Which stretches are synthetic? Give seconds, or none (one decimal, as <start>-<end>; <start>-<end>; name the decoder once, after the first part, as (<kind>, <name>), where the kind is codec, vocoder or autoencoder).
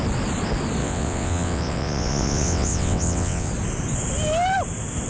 0.8-3.5 (vocoder, WaveNeXt)